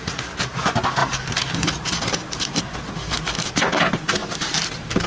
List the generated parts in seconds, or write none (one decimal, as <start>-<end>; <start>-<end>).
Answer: 1.0-2.6; 4.2-5.1